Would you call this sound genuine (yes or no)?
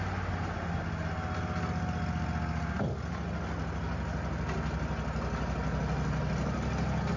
yes